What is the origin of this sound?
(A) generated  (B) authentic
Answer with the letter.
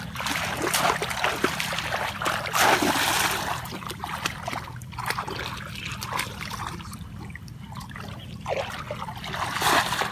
B